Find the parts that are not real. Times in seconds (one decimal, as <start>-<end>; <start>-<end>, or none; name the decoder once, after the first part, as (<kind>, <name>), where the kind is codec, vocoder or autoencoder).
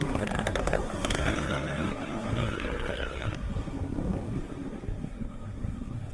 0.0-6.1 (codec, SNAC)